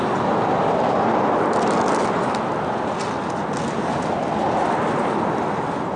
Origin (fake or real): real